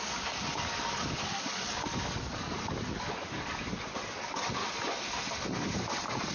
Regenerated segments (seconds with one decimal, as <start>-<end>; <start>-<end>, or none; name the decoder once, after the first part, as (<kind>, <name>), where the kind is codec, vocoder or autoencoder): 0.0-4.6 (codec, DAC)